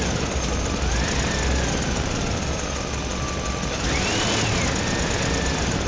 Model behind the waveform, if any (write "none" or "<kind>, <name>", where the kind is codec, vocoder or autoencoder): none